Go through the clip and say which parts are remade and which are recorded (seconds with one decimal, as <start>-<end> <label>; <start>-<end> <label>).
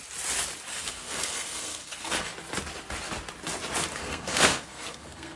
0.0-0.7 recorded; 0.7-2.3 remade; 2.3-4.0 recorded; 4.0-5.4 remade